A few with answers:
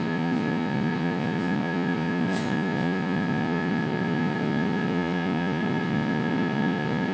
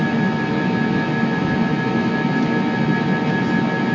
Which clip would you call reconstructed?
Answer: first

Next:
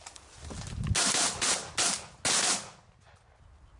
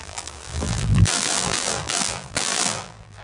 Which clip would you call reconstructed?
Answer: second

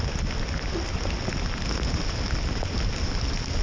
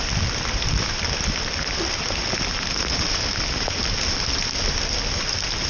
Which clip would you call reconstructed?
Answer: second